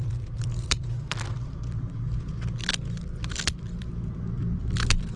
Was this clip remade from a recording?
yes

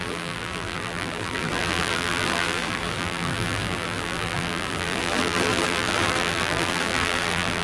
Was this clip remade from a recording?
yes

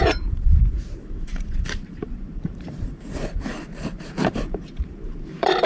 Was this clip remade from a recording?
yes